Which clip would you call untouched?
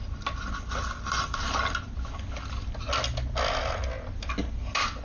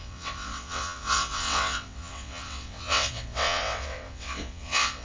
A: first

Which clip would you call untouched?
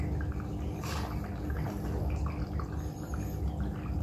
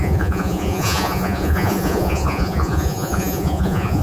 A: first